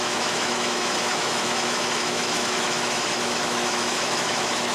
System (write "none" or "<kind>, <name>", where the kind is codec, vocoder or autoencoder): autoencoder, DAC-VAE